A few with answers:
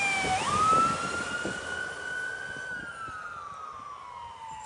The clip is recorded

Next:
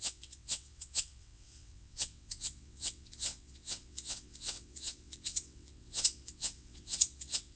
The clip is remade